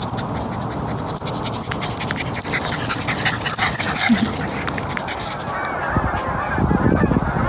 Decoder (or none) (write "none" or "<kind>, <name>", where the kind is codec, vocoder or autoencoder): none